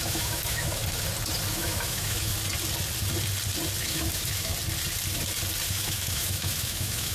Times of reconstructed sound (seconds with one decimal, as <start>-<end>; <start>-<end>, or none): 0.0-0.8; 1.5-2.3; 3.8-4.5; 5.7-7.1